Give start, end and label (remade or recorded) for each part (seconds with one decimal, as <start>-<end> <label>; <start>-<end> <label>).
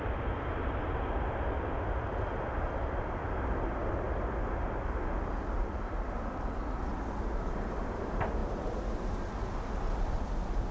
0.0-10.7 recorded